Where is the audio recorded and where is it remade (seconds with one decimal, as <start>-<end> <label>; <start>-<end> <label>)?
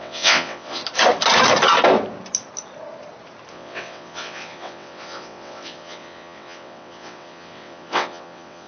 0.0-0.8 remade; 0.8-3.5 recorded; 3.5-8.7 remade